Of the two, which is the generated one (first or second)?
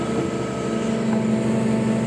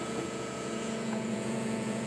second